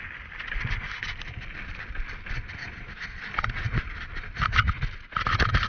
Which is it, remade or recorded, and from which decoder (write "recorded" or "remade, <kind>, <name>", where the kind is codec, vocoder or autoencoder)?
recorded